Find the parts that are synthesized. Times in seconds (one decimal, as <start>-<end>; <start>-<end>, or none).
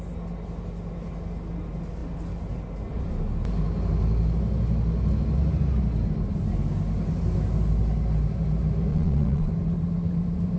8.9-9.5